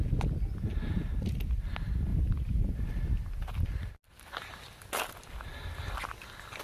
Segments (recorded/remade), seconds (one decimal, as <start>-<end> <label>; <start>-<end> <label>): 0.0-2.1 recorded; 2.1-2.9 remade; 2.9-5.5 recorded; 5.5-6.1 remade; 6.1-6.6 recorded